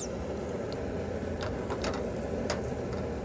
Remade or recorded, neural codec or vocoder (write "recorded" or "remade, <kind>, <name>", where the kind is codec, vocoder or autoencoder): recorded